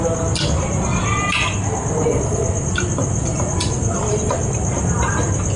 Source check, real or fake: real